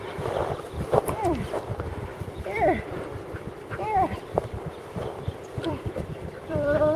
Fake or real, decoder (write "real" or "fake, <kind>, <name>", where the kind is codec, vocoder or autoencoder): fake, vocoder, BigVGAN v2